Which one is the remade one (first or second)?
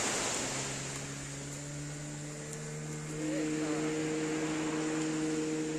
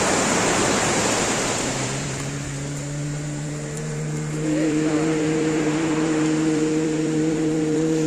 second